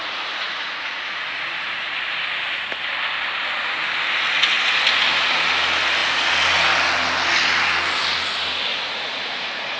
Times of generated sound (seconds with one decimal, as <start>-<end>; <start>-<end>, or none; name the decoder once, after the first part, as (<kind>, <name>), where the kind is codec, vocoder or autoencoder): 0.0-2.2 (vocoder, Vocos); 8.7-9.8